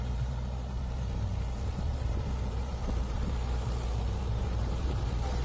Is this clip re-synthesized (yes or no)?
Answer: yes